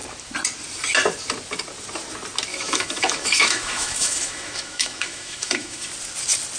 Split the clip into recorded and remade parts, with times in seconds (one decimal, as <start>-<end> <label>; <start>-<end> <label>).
0.0-2.5 recorded; 2.5-5.9 remade; 5.9-6.6 recorded